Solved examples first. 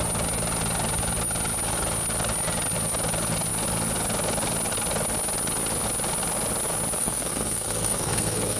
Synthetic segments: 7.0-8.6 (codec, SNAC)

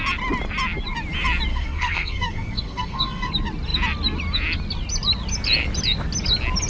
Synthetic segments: 1.5-3.3 (codec, SNAC)

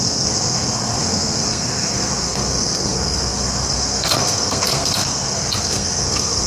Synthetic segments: 0.0-6.5 (codec, SNAC)

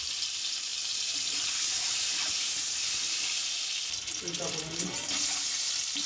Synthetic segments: none

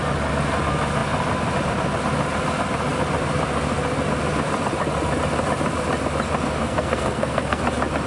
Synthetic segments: 6.6-7.6 (codec, SNAC)

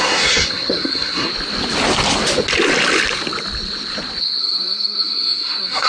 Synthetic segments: 0.0-1.3 (codec, SNAC); 4.4-5.9

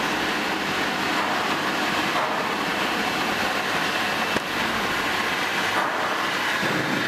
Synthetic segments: none

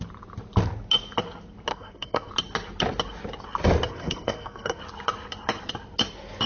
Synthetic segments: 1.7-2.3 (codec, SNAC); 3.9-4.8